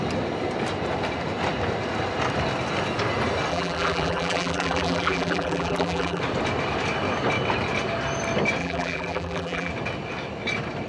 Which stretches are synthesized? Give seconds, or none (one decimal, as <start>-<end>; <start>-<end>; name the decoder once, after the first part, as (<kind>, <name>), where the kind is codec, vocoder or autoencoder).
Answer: 3.5-6.2 (vocoder, BigVGAN v2); 8.6-9.7